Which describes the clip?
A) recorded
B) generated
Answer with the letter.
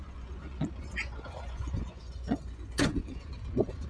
B